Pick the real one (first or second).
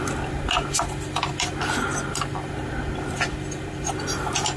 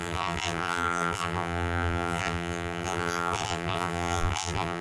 first